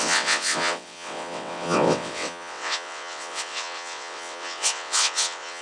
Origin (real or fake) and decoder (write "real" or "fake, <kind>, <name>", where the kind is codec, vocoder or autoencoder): fake, vocoder, WaveNeXt